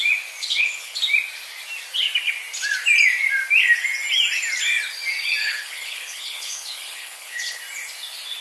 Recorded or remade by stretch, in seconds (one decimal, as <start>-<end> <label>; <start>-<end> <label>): 0.0-0.4 recorded; 0.4-1.0 remade; 1.0-5.4 recorded; 5.4-7.6 remade; 7.6-8.4 recorded